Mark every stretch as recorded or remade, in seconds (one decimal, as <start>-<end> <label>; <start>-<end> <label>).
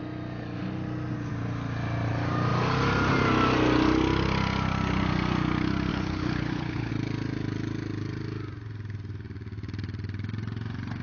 0.0-5.9 recorded; 5.9-6.9 remade; 6.9-11.0 recorded